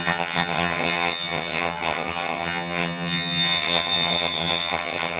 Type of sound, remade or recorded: remade